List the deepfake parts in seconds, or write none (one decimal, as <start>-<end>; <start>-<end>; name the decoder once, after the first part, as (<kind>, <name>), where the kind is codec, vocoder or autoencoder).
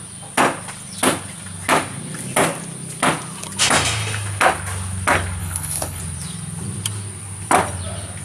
5.4-6.0 (codec, HILCodec)